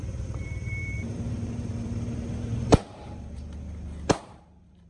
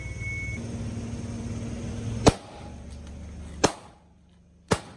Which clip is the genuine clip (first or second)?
second